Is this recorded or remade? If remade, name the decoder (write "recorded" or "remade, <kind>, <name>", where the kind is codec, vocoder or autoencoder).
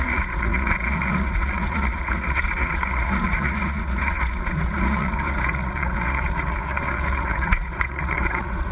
remade, vocoder, Vocos